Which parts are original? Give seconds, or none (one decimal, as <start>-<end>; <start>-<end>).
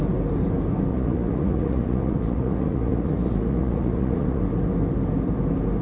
0.0-0.9; 4.4-5.8